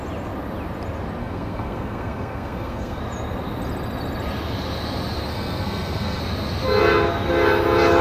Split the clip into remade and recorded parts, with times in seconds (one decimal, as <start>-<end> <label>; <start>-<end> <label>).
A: 0.0-1.2 recorded; 1.2-3.0 remade; 3.0-5.3 recorded; 5.3-6.2 remade; 6.2-8.0 recorded